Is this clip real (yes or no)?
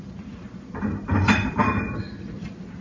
no